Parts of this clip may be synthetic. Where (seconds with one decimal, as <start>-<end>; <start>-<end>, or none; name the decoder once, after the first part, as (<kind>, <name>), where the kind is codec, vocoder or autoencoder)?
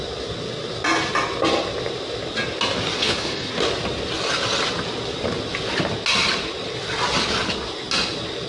3.0-3.5 (codec, HILCodec)